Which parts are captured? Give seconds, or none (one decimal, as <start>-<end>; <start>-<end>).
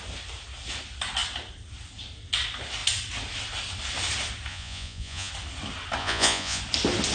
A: 0.0-4.5; 5.3-6.0; 6.6-7.1